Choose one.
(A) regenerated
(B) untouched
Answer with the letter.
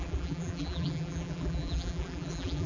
A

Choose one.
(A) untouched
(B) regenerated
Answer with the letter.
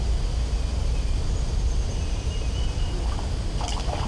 A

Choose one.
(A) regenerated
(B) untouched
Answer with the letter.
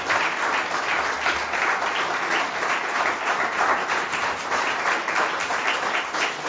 B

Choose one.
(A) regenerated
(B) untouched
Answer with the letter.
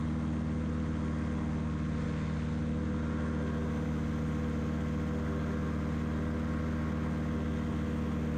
B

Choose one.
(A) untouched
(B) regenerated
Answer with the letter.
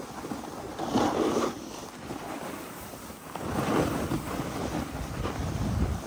A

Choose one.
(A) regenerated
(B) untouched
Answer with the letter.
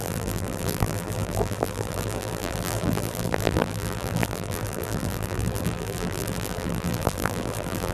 A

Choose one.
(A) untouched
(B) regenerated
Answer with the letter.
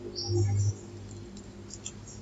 A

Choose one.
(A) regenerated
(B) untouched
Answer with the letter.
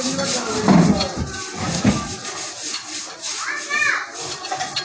B